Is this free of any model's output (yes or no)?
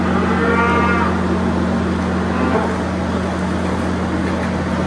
yes